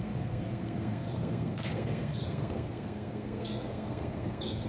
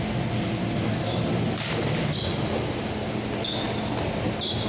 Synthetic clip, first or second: first